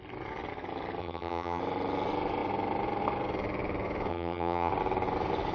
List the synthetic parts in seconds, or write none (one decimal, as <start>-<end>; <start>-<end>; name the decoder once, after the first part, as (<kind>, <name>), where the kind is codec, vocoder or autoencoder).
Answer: 1.0-1.6 (vocoder, HiFi-GAN); 4.1-4.7